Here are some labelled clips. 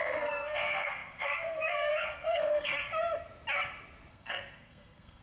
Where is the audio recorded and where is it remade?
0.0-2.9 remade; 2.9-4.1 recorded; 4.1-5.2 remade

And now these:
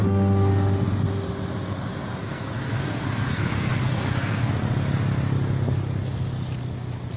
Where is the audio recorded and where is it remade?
0.0-2.2 recorded; 2.2-4.5 remade; 4.5-7.2 recorded

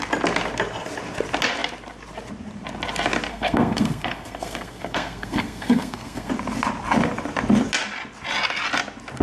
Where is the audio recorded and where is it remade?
0.0-3.3 recorded; 3.3-6.3 remade; 6.3-9.2 recorded

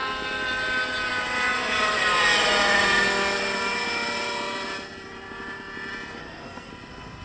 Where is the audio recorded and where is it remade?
0.0-6.2 recorded; 6.2-6.7 remade; 6.7-7.2 recorded

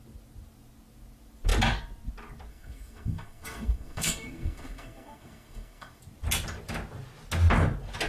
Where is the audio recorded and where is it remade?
0.0-2.5 recorded; 2.5-6.0 remade; 6.0-8.1 recorded

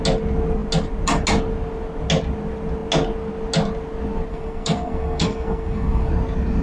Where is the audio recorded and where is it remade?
0.0-4.3 recorded; 4.3-6.1 remade; 6.1-6.6 recorded

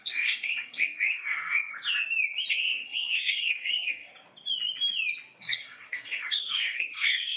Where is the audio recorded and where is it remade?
0.0-1.7 remade; 1.7-2.5 recorded; 2.5-4.1 remade; 4.1-5.4 recorded; 5.4-7.4 remade